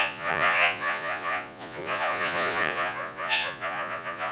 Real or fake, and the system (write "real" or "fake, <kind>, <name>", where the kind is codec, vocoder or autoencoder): fake, vocoder, Vocos